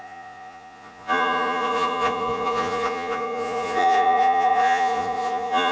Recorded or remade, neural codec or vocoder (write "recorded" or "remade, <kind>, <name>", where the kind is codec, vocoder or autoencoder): remade, vocoder, Vocos